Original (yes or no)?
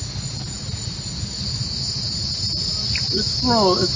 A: yes